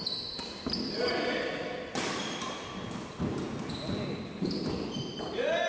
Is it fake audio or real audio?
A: real